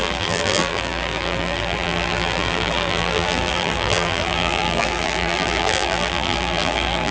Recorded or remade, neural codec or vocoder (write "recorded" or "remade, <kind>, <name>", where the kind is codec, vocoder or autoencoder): remade, vocoder, BigVGAN v2